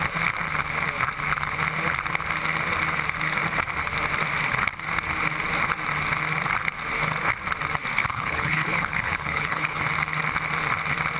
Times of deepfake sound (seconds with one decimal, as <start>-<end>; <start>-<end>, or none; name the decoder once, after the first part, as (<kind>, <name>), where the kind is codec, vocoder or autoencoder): 8.0-9.8 (codec, HILCodec)